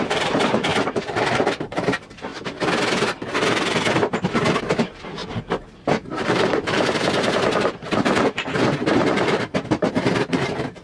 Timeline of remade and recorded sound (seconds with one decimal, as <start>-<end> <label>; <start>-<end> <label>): 0.0-2.3 remade; 2.3-4.6 recorded; 4.6-10.8 remade